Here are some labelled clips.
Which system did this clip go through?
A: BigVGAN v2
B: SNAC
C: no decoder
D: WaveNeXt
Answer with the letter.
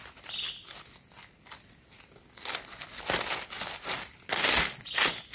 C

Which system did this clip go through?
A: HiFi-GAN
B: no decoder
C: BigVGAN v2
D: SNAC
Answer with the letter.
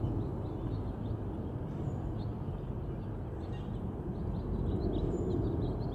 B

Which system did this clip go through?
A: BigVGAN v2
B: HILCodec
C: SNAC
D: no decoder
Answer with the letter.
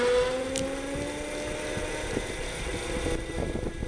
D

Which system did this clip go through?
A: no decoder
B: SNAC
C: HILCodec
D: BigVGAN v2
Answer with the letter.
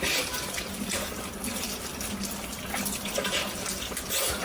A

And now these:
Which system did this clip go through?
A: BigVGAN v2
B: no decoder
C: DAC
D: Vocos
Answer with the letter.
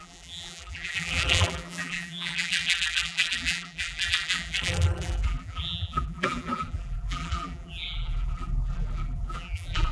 A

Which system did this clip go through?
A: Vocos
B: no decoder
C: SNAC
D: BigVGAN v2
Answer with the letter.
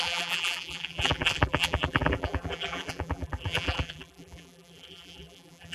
D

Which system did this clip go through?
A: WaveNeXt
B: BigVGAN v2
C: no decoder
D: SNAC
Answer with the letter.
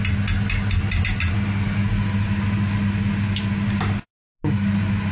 C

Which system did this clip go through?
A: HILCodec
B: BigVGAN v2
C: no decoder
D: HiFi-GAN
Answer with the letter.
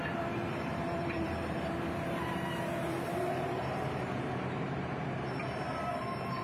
B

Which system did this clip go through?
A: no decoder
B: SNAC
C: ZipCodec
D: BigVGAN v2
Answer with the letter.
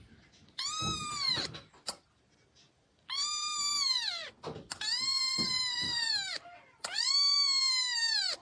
A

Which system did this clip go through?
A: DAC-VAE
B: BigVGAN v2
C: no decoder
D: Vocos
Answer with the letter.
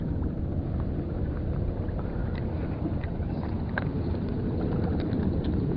B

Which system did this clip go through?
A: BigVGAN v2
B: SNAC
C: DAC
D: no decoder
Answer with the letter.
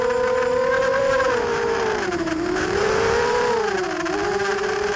A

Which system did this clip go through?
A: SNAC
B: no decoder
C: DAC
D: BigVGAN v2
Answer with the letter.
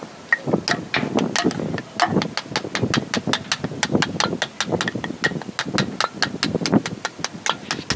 B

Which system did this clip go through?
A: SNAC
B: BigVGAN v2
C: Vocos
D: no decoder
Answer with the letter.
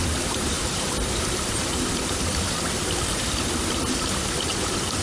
D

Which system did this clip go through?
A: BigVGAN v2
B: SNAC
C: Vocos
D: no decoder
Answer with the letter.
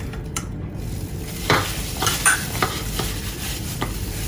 A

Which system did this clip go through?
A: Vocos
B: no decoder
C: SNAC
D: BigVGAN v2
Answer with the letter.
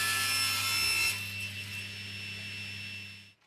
B